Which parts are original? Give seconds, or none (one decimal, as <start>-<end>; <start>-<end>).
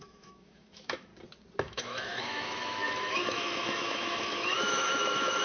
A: 1.1-1.6